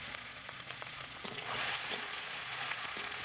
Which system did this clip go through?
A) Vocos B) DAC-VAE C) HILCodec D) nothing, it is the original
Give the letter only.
A